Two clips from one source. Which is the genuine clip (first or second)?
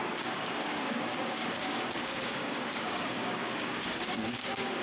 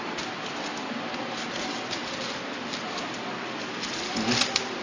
second